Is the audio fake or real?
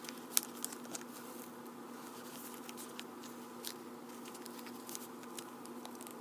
real